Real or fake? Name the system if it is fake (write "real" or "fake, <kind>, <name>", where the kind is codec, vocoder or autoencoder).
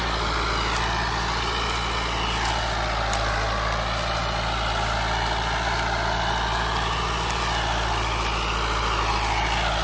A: real